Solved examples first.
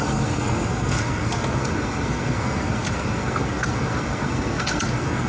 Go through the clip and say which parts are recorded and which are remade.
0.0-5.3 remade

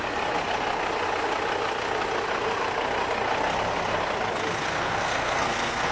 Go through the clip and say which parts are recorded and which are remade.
0.0-4.6 recorded; 4.6-5.9 remade

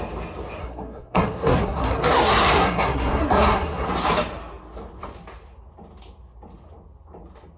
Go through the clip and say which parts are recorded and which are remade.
0.0-0.6 recorded; 0.6-3.9 remade; 3.9-7.6 recorded